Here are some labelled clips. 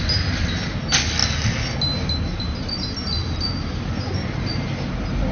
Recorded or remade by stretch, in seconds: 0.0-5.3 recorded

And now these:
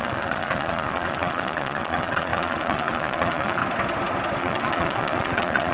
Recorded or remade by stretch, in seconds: 0.0-3.6 remade; 3.6-4.4 recorded; 4.4-5.7 remade